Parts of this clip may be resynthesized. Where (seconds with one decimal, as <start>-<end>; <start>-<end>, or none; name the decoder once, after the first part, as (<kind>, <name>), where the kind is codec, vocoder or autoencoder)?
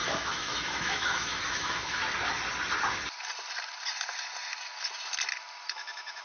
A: 0.0-2.0 (autoencoder, DAC-VAE); 5.7-6.2